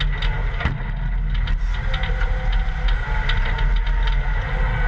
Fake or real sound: real